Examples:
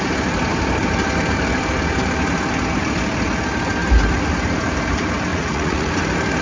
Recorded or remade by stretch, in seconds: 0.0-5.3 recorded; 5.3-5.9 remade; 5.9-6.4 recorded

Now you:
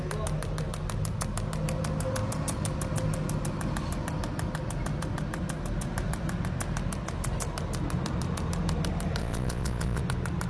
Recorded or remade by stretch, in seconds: 0.0-9.2 recorded; 9.2-10.0 remade; 10.0-10.5 recorded

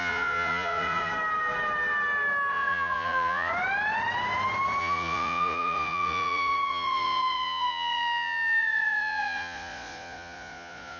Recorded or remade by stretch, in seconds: 0.0-1.1 remade; 1.1-2.5 recorded; 2.5-3.5 remade; 3.5-4.8 recorded; 4.8-11.0 remade

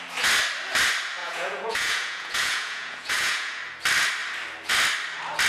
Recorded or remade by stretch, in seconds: 0.0-1.2 recorded; 1.2-3.6 remade; 3.6-5.5 recorded

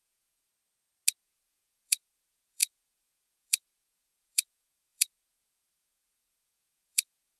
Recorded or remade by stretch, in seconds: 0.0-0.5 remade; 0.5-1.2 recorded; 1.2-7.4 remade

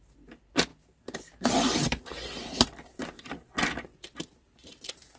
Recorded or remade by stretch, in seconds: 0.0-5.2 recorded

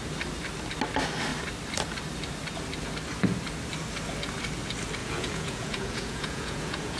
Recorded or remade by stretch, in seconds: 0.0-5.0 recorded; 5.0-7.0 remade

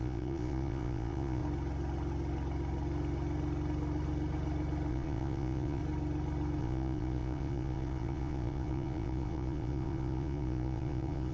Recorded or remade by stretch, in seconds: 0.0-1.4 remade; 1.4-4.9 recorded; 4.9-5.8 remade; 5.8-6.6 recorded; 6.6-11.3 remade